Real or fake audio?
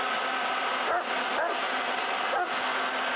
real